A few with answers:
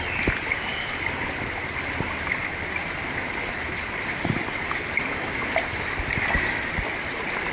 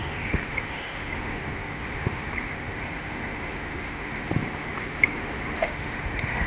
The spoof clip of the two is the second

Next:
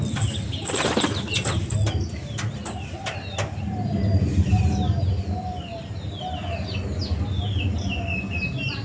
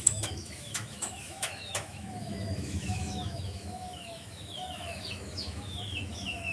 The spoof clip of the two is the second